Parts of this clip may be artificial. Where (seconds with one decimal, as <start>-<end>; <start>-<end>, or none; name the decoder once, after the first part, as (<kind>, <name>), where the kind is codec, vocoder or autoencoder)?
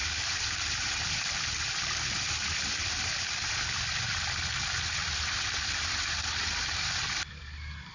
0.0-7.9 (vocoder, BigVGAN v2)